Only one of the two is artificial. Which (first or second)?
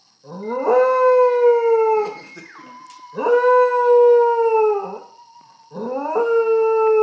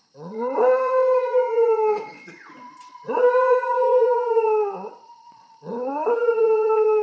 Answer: second